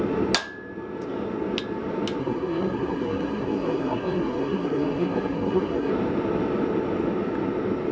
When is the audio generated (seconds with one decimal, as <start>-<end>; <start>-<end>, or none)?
2.2-5.9